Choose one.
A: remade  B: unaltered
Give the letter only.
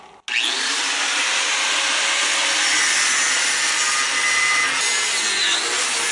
B